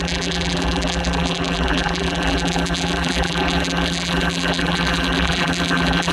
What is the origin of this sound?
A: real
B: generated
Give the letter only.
B